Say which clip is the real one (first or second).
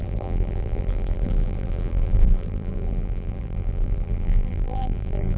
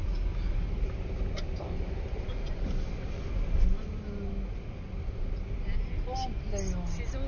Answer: second